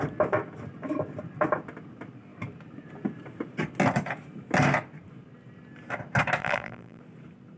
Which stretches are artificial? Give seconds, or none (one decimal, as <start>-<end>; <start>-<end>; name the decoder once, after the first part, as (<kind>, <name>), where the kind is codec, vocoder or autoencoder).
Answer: 6.4-7.0 (vocoder, BigVGAN v2)